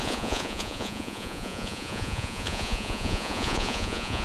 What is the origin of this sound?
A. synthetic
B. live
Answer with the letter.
A